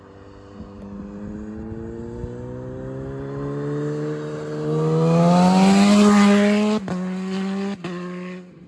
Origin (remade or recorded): recorded